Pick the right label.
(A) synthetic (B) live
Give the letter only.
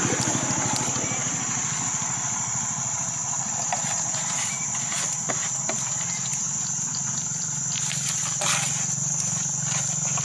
B